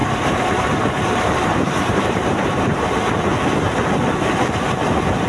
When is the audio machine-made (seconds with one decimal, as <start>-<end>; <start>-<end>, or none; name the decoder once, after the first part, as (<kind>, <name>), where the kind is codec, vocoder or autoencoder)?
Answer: 0.0-2.8 (vocoder, BigVGAN v2)